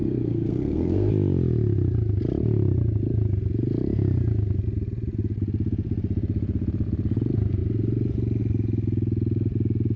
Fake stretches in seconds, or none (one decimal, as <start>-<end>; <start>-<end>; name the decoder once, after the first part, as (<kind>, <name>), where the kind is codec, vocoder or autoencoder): 0.0-1.1 (codec, SNAC)